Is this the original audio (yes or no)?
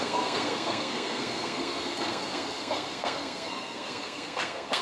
no